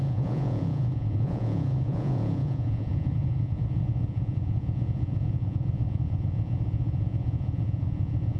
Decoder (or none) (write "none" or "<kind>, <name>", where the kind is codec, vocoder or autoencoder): vocoder, Vocos